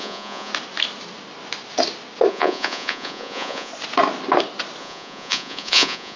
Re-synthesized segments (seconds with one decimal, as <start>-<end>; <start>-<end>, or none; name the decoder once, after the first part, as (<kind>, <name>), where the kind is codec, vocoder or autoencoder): 0.0-0.5 (vocoder, Vocos); 2.3-3.7; 4.8-6.2